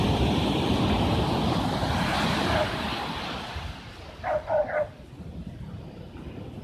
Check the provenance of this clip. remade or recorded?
recorded